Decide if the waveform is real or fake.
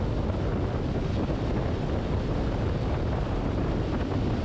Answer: real